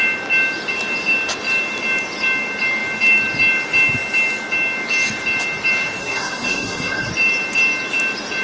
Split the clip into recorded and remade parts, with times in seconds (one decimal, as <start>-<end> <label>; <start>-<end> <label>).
0.0-6.0 recorded; 6.0-7.1 remade; 7.1-8.4 recorded